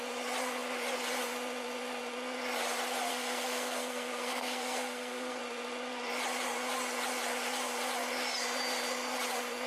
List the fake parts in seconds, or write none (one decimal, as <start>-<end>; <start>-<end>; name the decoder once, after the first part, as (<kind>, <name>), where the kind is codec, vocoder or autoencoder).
3.1-5.4 (codec, SNAC)